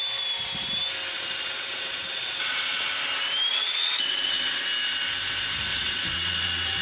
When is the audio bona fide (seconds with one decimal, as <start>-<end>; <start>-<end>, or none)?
0.0-1.1; 2.9-3.5; 4.6-5.7